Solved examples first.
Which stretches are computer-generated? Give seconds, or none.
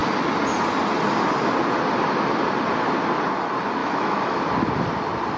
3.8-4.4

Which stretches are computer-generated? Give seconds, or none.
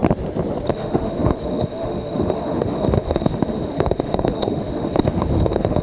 0.7-5.8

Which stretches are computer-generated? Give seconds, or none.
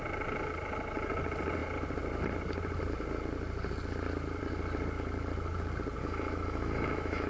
6.0-7.3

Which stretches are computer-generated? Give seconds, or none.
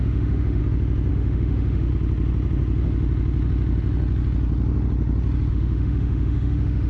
0.0-0.6; 1.1-1.9; 5.5-6.9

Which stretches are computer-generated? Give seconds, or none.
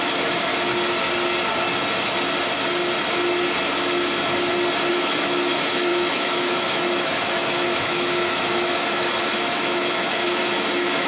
0.0-0.5; 4.9-11.1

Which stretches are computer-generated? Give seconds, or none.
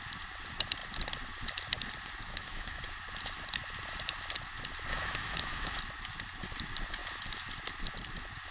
2.3-2.8; 4.9-5.8